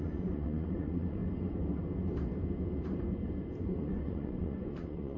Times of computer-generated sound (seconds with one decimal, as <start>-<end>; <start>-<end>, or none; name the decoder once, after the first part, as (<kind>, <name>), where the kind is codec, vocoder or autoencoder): 0.0-1.2 (vocoder, Vocos); 3.6-5.2